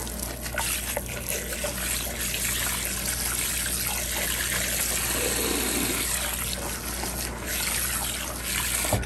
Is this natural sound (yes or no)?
yes